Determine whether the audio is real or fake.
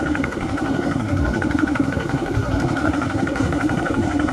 fake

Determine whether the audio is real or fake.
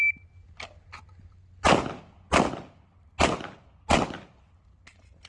real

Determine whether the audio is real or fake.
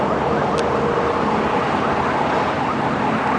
real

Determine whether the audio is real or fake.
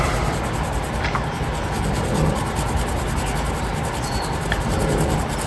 real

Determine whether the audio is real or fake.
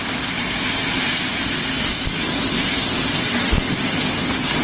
real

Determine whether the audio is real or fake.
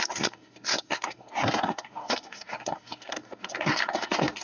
fake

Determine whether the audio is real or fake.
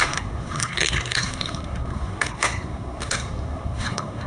fake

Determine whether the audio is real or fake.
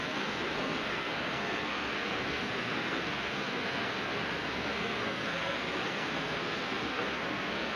fake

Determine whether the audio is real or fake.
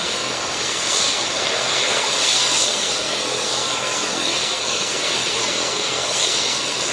fake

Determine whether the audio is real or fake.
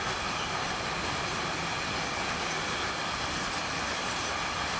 real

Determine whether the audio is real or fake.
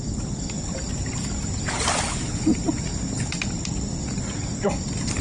real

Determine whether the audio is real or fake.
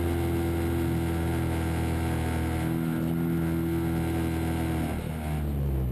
real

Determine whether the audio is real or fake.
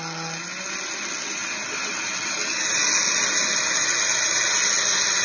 real